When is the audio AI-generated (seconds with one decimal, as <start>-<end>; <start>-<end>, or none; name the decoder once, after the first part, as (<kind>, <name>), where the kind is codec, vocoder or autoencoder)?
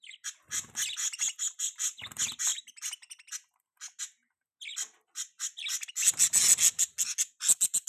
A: 4.7-5.9 (vocoder, BigVGAN v2)